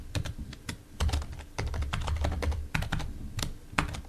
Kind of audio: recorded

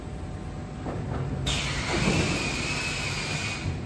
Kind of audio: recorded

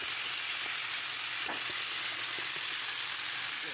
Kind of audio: recorded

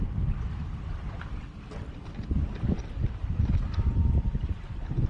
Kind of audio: recorded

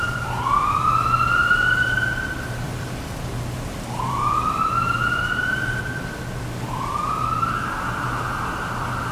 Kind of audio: remade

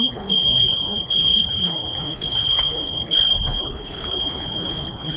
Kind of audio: remade